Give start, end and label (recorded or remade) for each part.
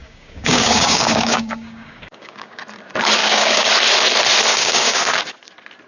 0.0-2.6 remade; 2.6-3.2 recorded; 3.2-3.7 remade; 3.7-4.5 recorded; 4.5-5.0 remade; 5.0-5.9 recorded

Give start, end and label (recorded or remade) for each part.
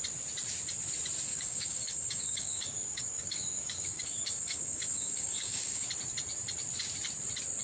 0.0-1.3 recorded; 1.3-5.9 remade; 5.9-7.6 recorded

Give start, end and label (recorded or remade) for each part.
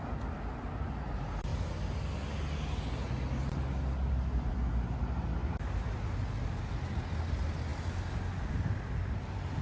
0.0-9.6 recorded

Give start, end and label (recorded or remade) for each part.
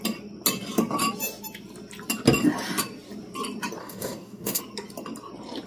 0.0-3.8 recorded; 3.8-4.6 remade; 4.6-5.7 recorded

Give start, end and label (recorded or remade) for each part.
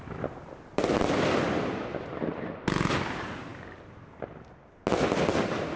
0.0-5.8 recorded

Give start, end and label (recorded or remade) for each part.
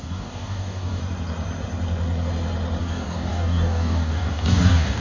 0.0-1.0 remade; 1.0-2.8 recorded; 2.8-5.0 remade